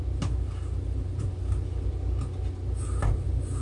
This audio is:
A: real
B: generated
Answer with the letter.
A